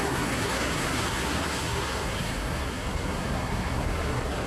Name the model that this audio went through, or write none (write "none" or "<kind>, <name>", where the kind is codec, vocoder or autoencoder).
codec, SNAC